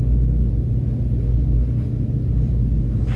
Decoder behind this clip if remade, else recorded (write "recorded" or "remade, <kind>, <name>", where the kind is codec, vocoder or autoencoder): recorded